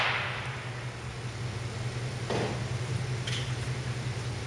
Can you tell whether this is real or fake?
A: real